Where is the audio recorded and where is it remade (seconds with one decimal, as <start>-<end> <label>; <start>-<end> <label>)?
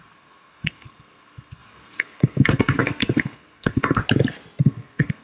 0.0-4.0 remade; 4.0-4.6 recorded; 4.6-5.2 remade